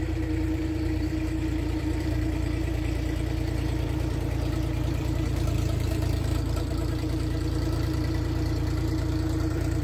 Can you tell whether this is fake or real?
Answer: fake